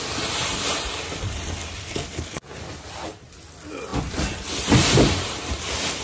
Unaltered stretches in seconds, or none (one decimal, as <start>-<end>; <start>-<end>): 0.0-1.8; 2.4-6.0